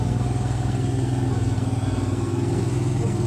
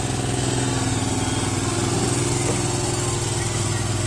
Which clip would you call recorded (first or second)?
second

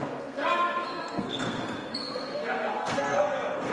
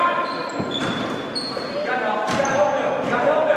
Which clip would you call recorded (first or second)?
second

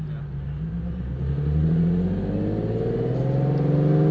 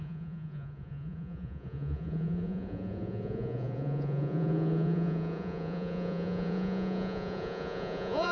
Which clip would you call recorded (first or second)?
first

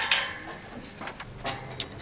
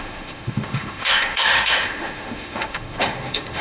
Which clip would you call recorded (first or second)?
first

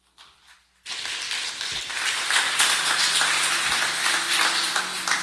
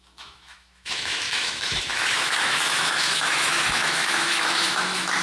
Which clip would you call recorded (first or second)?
first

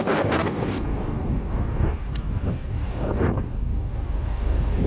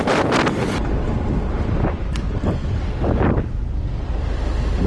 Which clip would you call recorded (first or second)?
second